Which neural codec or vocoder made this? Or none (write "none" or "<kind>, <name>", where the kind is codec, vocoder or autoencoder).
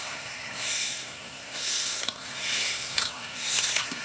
codec, SNAC